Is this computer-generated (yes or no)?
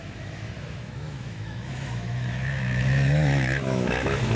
yes